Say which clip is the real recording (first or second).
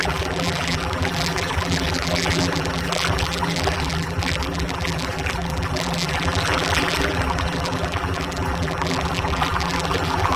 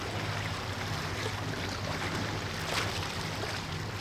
second